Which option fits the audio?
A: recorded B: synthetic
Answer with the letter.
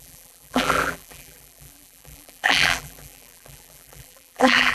B